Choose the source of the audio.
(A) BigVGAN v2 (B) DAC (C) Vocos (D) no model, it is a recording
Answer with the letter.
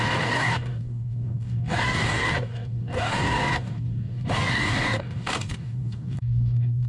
B